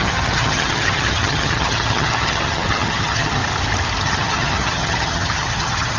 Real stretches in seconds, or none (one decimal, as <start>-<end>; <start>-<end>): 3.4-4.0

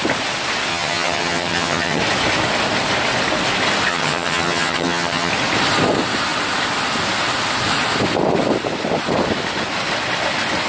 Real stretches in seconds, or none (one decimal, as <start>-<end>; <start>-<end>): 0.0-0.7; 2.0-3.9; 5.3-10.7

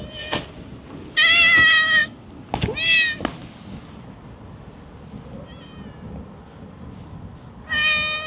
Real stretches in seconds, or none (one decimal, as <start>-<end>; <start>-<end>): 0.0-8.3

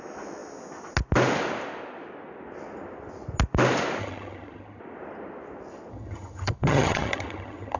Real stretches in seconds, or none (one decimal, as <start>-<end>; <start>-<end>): 0.0-4.0; 4.8-5.9